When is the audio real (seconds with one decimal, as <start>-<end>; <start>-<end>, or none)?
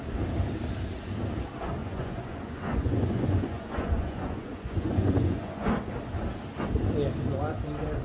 0.0-1.8; 5.7-8.0